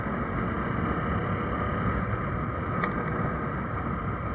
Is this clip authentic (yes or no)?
yes